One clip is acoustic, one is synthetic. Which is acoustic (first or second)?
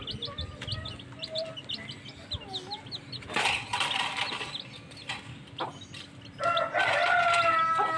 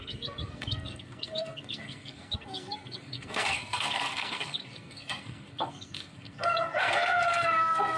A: first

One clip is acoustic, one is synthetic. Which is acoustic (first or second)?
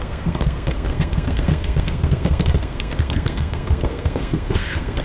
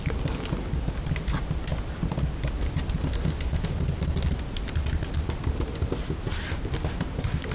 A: second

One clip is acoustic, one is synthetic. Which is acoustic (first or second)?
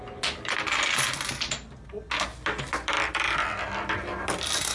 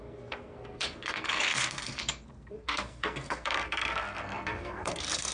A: first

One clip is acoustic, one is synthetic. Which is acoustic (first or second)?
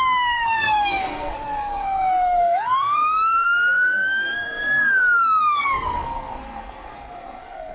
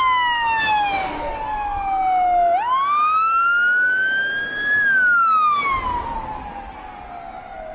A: second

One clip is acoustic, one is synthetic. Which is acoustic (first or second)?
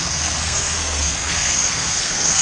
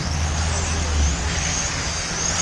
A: second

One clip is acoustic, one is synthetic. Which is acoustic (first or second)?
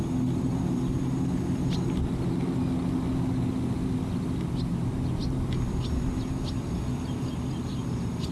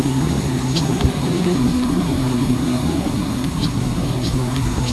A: first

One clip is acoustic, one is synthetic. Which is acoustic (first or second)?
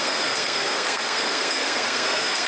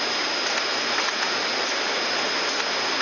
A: second